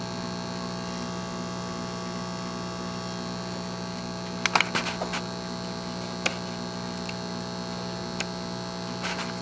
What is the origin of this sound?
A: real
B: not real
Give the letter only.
A